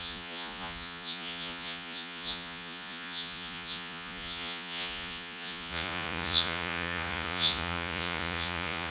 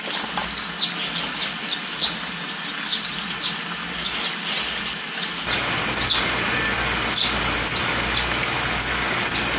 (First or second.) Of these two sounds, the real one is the second